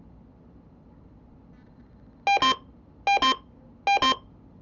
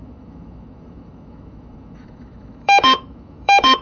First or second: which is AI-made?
second